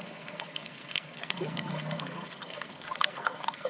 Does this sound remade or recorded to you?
remade